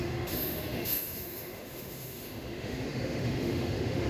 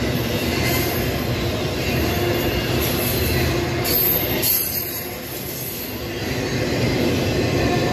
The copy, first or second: first